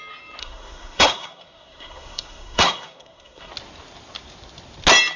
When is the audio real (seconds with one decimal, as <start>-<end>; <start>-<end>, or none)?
0.0-0.4; 3.5-5.2